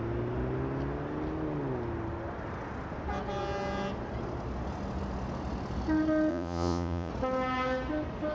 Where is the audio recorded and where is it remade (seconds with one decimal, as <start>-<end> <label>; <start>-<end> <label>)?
0.0-6.3 recorded; 6.3-7.1 remade; 7.1-8.3 recorded